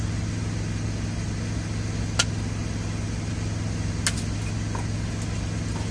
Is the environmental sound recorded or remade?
recorded